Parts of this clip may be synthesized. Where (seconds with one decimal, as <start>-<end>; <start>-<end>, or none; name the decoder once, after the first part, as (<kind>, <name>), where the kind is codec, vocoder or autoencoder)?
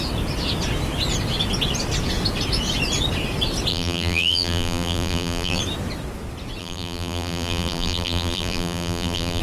3.7-5.6 (vocoder, BigVGAN v2); 6.6-9.4